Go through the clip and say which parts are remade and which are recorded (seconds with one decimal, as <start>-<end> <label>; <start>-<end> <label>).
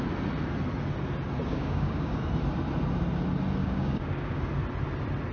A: 0.0-1.5 recorded; 1.5-2.2 remade; 2.2-3.6 recorded; 3.6-4.4 remade; 4.4-5.3 recorded